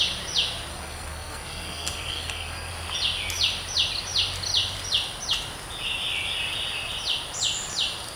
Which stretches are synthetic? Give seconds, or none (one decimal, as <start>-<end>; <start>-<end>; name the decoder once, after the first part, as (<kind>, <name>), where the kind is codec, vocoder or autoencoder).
0.7-2.7 (codec, SNAC)